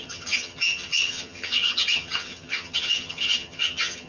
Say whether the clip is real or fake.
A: fake